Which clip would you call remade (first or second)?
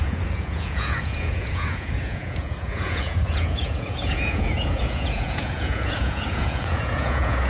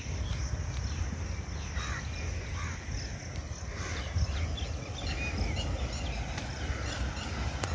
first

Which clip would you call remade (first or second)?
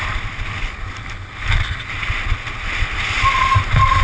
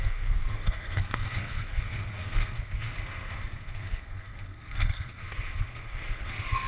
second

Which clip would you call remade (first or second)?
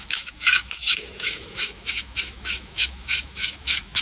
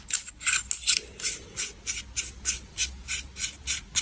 first